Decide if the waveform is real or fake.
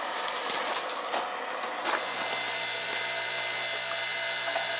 real